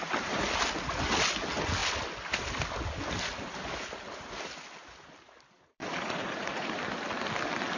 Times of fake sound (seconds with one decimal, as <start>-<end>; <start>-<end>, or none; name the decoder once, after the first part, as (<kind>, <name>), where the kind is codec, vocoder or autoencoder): 5.8-6.8 (vocoder, Vocos)